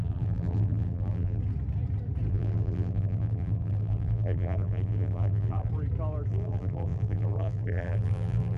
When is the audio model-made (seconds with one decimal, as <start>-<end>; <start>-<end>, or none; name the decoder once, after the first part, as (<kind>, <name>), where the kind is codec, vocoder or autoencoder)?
0.0-1.4 (vocoder, BigVGAN v2); 2.3-5.7; 6.3-8.6

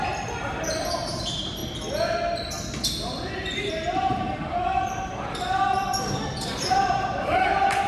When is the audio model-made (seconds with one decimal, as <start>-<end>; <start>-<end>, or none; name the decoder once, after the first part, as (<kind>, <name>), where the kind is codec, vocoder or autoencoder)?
0.0-1.6 (vocoder, BigVGAN v2); 3.7-7.9

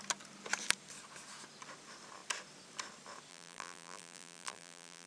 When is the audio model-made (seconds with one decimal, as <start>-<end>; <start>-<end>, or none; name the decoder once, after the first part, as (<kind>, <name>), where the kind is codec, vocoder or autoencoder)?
3.3-5.1 (vocoder, BigVGAN v2)

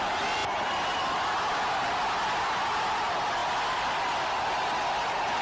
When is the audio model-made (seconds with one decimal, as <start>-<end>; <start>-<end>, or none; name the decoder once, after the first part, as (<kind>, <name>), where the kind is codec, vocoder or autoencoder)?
none

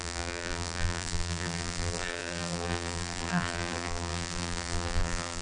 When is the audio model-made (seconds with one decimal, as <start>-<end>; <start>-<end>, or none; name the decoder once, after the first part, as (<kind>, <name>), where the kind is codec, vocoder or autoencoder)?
0.0-5.4 (vocoder, BigVGAN v2)

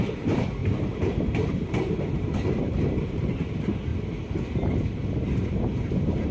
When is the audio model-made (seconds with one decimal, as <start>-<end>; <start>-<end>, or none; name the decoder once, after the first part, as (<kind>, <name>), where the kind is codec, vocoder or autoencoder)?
0.0-3.9 (vocoder, BigVGAN v2); 5.1-6.3

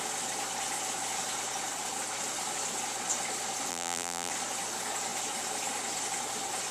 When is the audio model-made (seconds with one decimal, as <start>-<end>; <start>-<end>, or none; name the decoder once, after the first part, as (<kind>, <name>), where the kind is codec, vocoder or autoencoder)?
3.7-4.3 (vocoder, BigVGAN v2)